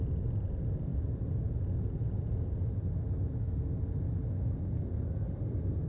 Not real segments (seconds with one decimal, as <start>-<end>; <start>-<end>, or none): none